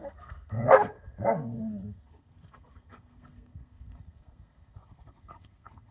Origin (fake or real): fake